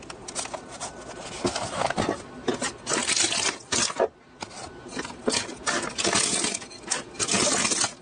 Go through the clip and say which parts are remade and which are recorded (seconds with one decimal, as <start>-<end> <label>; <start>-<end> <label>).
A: 0.0-8.0 recorded